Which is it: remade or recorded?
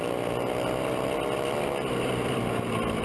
recorded